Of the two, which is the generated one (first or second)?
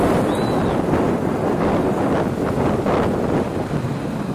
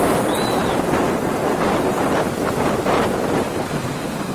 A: second